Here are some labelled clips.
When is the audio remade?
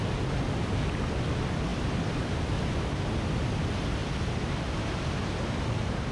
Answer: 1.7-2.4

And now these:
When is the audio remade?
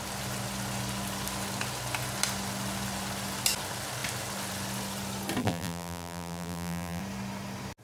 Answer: 5.4-7.0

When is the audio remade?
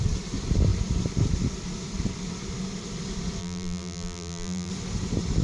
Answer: 3.4-4.7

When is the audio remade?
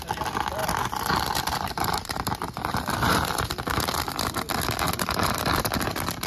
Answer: 0.6-4.4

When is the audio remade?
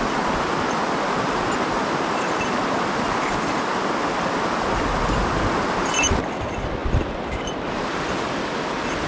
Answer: none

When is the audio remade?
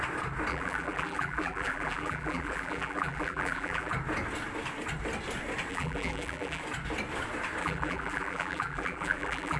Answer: 0.5-3.9; 5.7-6.6; 7.6-9.6